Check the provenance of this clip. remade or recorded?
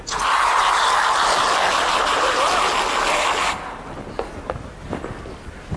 recorded